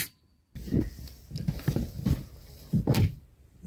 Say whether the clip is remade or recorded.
recorded